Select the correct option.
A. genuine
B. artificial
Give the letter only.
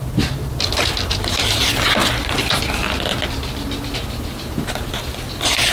A